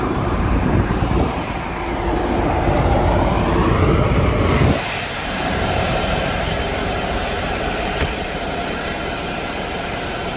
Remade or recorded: remade